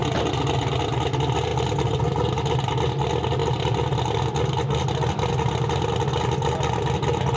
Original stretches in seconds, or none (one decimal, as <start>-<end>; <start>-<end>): 0.0-7.4